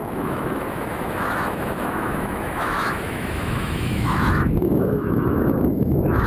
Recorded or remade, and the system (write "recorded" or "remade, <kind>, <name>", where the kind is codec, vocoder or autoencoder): remade, autoencoder, DAC-VAE